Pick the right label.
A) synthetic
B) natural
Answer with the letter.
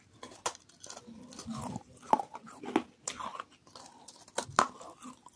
B